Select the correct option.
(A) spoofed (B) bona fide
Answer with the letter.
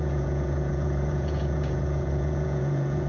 A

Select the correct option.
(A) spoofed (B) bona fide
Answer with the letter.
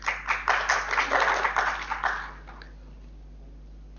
B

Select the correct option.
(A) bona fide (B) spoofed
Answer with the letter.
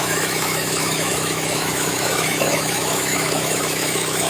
B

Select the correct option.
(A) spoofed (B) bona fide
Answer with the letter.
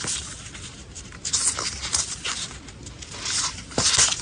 B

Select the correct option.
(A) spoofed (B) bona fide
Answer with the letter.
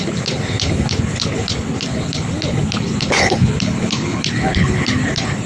A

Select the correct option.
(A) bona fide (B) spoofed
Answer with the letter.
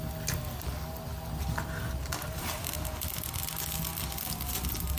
A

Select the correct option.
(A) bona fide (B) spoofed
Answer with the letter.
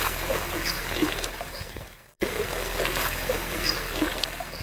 B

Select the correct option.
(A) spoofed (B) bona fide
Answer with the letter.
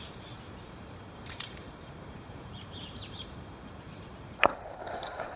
A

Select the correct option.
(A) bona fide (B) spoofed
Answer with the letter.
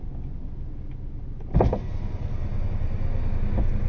A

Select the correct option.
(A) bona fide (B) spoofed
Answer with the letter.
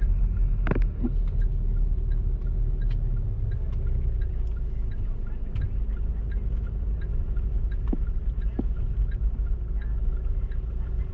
A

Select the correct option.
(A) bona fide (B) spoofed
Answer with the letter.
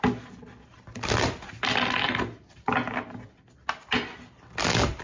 A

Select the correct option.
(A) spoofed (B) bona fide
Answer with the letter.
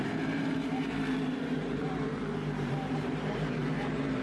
A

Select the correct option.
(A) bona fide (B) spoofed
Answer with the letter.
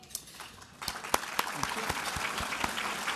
A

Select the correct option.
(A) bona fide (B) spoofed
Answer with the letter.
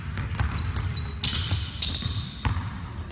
A